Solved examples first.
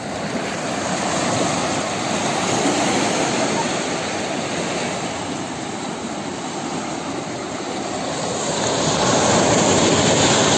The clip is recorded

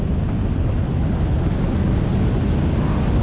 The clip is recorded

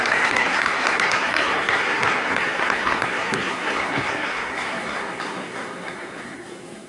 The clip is remade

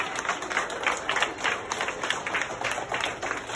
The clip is recorded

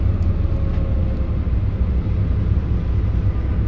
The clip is recorded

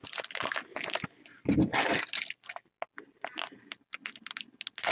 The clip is recorded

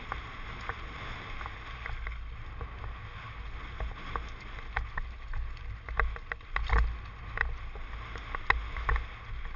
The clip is recorded